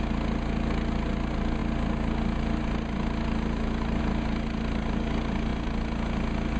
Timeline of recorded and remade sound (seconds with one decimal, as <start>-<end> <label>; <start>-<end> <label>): 0.0-6.6 recorded

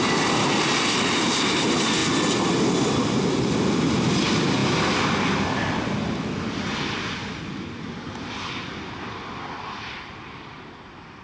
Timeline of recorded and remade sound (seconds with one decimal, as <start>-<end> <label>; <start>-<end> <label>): 0.0-11.2 recorded